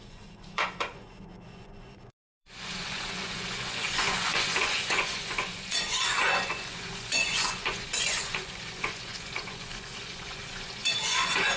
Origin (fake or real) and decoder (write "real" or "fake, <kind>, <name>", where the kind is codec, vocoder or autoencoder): fake, vocoder, Vocos